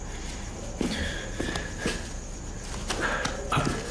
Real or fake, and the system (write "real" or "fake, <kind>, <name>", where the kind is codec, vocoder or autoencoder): real